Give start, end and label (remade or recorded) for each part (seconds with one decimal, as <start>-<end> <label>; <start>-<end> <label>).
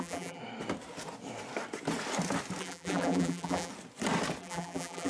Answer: 0.0-0.4 remade; 0.4-2.6 recorded; 2.6-3.7 remade; 3.7-4.4 recorded; 4.4-5.1 remade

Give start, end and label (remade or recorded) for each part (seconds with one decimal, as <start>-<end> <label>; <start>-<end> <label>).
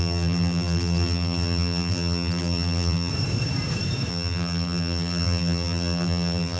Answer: 0.0-3.1 remade; 3.1-4.1 recorded; 4.1-6.6 remade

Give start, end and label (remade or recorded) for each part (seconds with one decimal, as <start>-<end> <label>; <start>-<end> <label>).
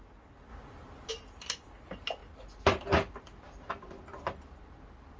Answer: 0.0-5.2 recorded